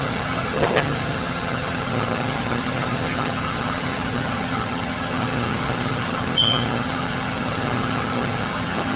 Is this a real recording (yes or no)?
no